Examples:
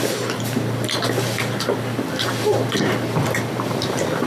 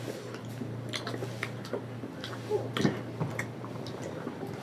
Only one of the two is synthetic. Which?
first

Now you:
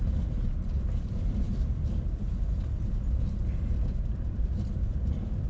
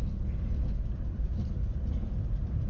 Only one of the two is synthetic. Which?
first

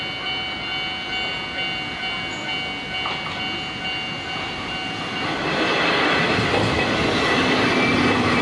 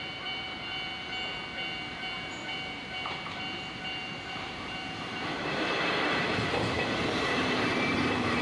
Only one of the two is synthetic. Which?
second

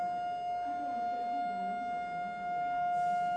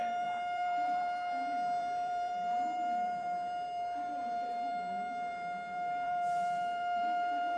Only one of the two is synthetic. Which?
second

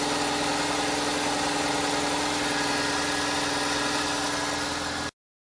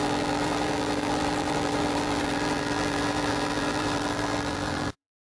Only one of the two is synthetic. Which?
second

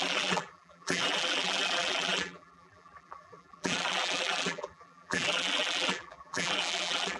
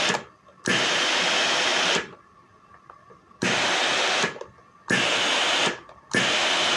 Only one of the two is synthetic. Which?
first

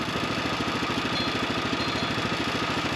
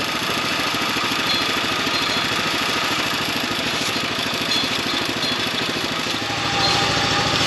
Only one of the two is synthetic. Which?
second